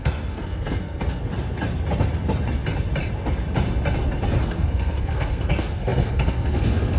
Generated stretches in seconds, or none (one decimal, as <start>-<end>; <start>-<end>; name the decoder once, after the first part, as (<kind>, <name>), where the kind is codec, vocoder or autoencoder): 0.0-1.2 (codec, SNAC); 4.4-7.0